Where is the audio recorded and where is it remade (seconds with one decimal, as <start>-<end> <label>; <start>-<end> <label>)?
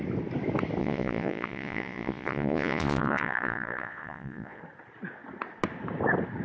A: 0.0-0.8 recorded; 0.8-4.6 remade; 4.6-6.4 recorded